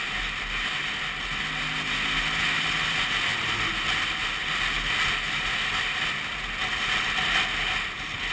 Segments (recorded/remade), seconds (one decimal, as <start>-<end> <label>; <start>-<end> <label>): 0.0-8.3 recorded